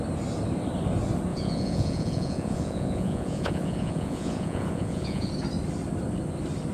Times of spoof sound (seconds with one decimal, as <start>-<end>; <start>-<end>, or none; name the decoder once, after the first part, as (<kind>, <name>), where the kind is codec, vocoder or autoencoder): 1.3-5.3 (vocoder, Vocos)